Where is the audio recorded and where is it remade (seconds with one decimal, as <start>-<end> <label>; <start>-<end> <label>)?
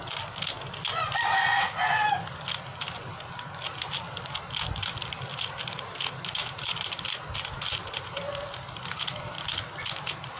0.0-6.4 recorded; 6.4-8.2 remade; 8.2-10.4 recorded